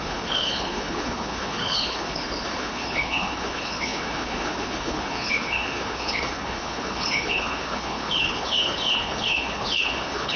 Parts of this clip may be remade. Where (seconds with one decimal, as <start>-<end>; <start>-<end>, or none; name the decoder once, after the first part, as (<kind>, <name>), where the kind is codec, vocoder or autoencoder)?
0.0-10.4 (codec, HILCodec)